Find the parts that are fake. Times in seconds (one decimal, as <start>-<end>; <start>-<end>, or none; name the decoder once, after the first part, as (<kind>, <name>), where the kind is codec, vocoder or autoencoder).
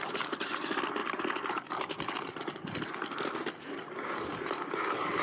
none